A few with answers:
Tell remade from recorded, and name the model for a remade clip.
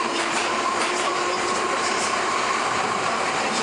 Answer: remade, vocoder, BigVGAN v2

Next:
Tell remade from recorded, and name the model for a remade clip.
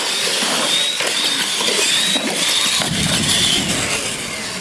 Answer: recorded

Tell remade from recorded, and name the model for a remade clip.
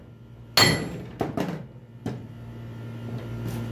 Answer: recorded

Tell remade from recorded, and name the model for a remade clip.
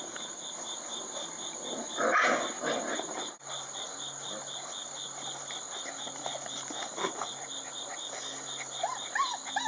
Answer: recorded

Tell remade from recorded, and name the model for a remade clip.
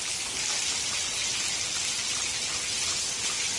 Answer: recorded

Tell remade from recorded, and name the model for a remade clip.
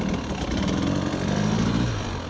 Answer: recorded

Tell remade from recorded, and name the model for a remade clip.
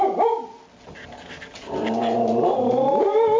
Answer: remade, vocoder, BigVGAN v2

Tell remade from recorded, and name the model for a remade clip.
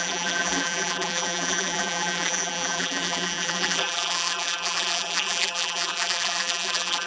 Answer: remade, vocoder, BigVGAN v2